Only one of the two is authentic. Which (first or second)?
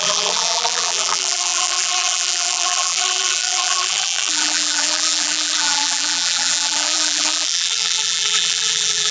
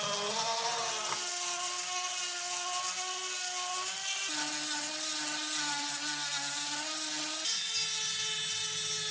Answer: second